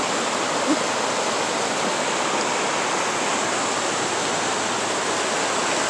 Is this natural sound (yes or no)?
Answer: yes